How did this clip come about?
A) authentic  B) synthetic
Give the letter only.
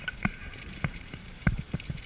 B